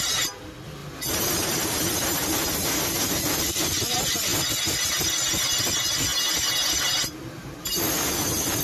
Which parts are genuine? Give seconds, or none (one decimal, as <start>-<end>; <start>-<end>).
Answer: 0.0-0.8; 3.2-6.1; 7.8-8.6